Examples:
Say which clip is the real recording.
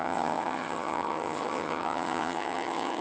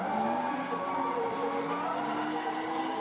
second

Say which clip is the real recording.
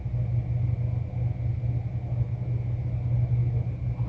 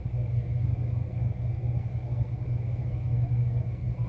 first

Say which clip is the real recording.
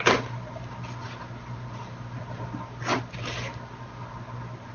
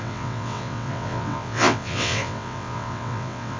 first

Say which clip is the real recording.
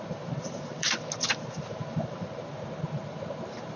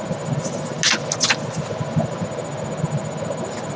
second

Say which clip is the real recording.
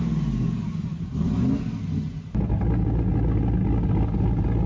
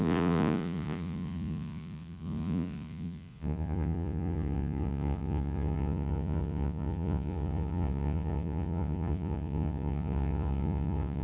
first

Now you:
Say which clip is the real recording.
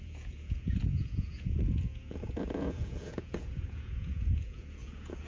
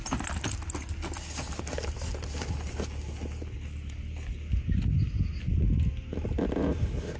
second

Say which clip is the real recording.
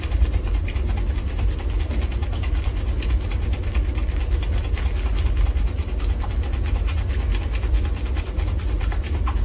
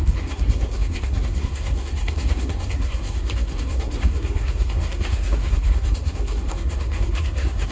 first